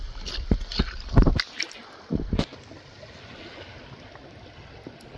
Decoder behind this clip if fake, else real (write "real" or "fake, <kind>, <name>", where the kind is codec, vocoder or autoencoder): real